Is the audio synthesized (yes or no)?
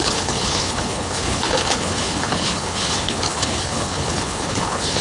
yes